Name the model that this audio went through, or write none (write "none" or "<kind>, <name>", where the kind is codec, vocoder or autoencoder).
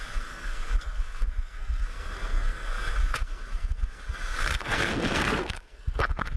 codec, SNAC